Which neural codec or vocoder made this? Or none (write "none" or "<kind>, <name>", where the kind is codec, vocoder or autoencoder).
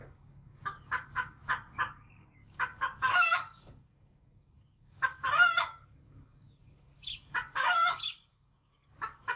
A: codec, DAC